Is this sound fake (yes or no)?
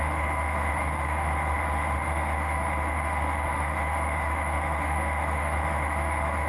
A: yes